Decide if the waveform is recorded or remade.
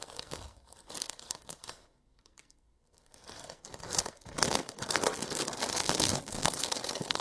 remade